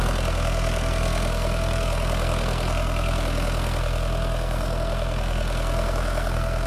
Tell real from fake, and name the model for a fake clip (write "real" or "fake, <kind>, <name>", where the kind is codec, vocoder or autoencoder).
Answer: fake, codec, SNAC